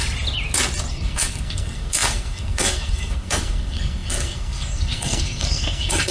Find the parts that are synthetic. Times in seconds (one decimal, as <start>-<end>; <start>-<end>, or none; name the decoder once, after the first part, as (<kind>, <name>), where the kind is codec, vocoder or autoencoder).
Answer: 0.9-6.1 (codec, SNAC)